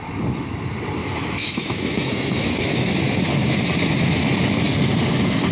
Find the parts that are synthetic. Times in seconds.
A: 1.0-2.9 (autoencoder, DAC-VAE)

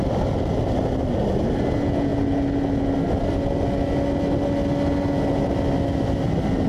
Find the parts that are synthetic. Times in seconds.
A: none

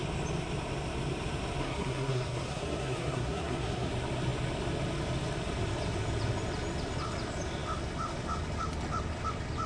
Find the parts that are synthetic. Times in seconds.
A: 1.6-3.9 (codec, SNAC)

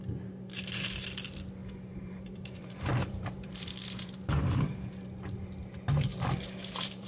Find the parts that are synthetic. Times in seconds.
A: 1.6-4.8 (vocoder, BigVGAN v2); 6.1-7.1